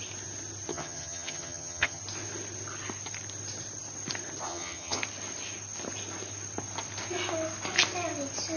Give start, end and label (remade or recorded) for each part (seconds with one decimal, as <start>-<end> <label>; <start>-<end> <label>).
0.0-0.7 recorded; 0.7-2.0 remade; 2.0-4.5 recorded; 4.5-5.0 remade; 5.0-8.6 recorded